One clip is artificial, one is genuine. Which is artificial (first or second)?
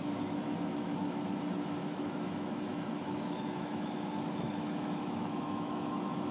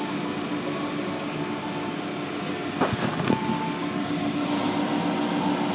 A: first